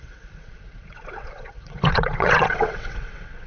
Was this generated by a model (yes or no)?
yes